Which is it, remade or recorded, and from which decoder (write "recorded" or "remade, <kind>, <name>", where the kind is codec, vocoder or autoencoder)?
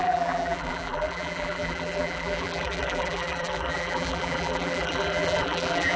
remade, vocoder, BigVGAN v2